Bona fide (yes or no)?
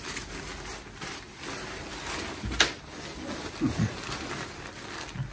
yes